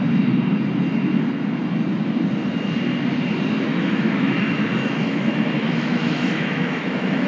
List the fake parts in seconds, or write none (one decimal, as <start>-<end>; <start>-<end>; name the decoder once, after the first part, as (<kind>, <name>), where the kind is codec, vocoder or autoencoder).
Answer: 3.7-7.3 (autoencoder, DAC-VAE)